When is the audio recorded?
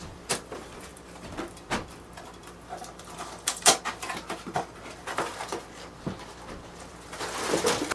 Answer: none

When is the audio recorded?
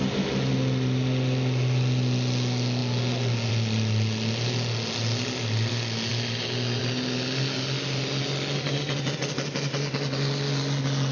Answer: 0.0-11.1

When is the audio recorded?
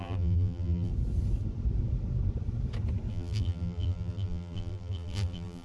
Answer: 0.9-3.1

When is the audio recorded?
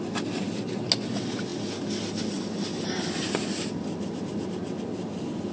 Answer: 0.0-5.5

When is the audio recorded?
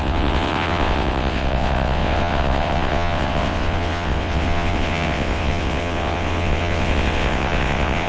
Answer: none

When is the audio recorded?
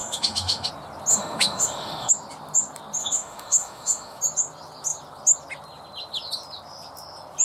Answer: 0.7-1.1; 2.1-3.0; 4.2-7.4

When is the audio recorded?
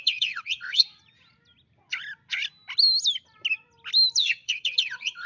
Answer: 1.0-4.2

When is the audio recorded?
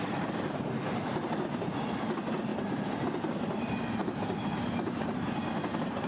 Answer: 0.0-2.5; 3.4-4.0; 5.3-6.1